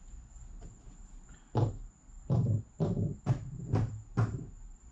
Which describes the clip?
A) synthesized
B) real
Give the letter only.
B